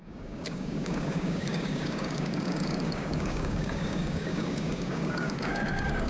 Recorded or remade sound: remade